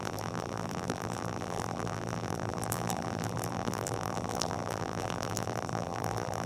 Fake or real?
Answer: fake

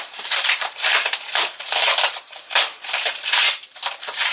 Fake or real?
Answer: fake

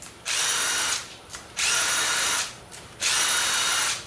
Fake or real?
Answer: fake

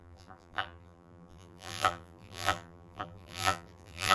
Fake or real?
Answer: fake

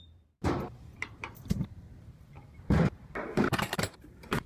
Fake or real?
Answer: fake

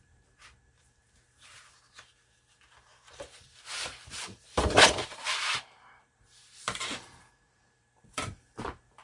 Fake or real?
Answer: fake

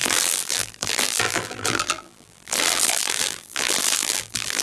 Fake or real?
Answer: fake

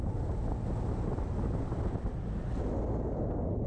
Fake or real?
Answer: real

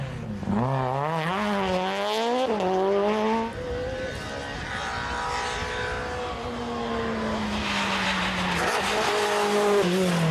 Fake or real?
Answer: real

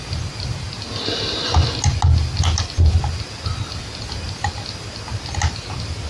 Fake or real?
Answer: real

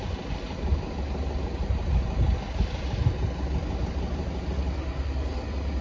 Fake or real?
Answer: real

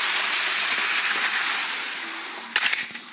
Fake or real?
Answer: fake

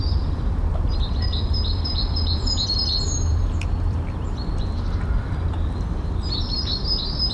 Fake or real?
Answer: fake